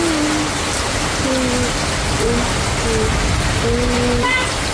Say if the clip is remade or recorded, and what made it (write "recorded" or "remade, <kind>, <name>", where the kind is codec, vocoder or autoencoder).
recorded